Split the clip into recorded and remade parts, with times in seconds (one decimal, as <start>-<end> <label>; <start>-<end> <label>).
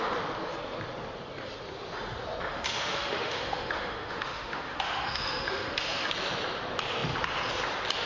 0.0-2.5 recorded; 2.5-6.1 remade; 6.1-8.1 recorded